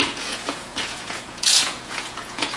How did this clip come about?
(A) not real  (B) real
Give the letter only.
A